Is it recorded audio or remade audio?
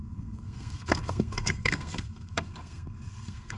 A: remade